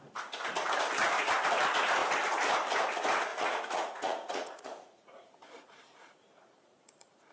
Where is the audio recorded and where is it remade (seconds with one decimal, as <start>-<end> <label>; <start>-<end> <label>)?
0.0-3.3 recorded; 3.3-7.3 remade